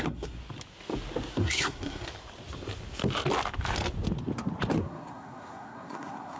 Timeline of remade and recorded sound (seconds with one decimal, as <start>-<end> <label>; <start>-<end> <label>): 0.0-0.4 remade; 0.4-1.3 recorded; 1.3-2.1 remade; 2.1-4.8 recorded; 4.8-6.4 remade